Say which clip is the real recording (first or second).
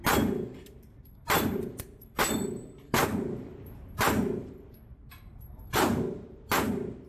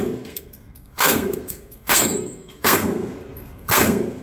first